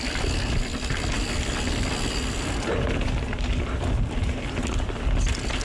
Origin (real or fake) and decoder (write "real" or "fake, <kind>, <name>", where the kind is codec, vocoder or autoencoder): real